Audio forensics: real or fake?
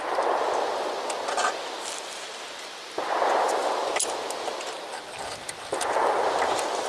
real